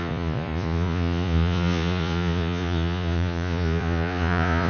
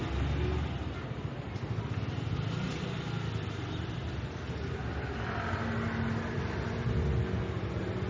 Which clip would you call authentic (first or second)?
second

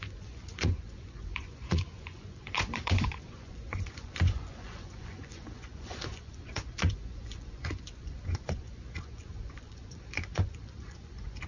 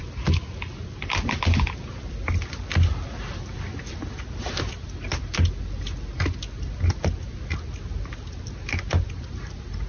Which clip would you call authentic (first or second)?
second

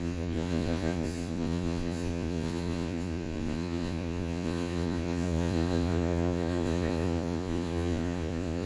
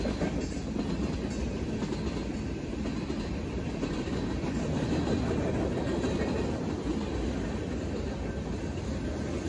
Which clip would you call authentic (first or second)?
second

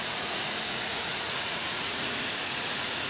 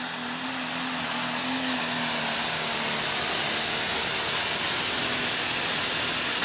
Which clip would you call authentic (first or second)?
second